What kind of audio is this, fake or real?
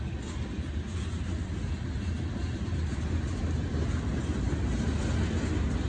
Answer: real